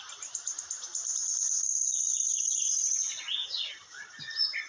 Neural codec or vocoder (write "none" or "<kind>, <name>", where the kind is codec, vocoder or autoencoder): none